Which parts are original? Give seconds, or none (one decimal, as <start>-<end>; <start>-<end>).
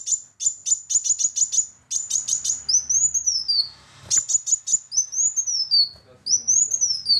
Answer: 0.0-7.2